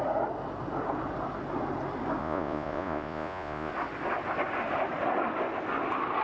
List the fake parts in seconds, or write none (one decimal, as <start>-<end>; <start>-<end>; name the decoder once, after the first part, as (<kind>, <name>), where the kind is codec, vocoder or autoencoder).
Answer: 2.2-3.7 (vocoder, Vocos)